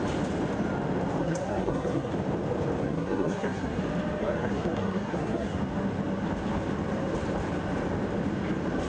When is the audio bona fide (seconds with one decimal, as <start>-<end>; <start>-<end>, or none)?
0.0-1.2; 2.1-2.8; 3.8-4.2; 5.6-8.9